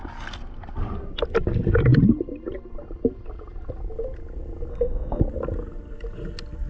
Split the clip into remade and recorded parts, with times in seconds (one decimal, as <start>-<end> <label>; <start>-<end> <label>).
0.0-4.7 recorded; 4.7-5.2 remade; 5.2-6.7 recorded